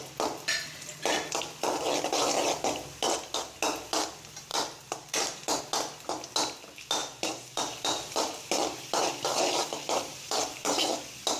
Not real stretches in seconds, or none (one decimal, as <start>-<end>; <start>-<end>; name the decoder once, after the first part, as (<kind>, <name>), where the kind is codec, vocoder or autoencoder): 4.5-5.6 (vocoder, BigVGAN v2); 7.0-8.2; 9.0-10.8